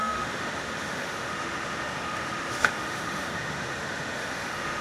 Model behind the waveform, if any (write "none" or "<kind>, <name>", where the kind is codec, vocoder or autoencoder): autoencoder, DAC-VAE